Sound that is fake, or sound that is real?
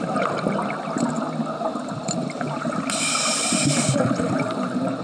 real